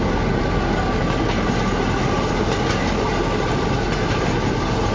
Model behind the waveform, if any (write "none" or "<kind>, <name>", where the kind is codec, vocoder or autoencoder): none